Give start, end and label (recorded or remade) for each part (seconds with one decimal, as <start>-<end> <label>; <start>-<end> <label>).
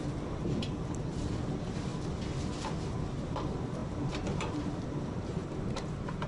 0.0-1.9 remade; 1.9-2.9 recorded; 2.9-6.3 remade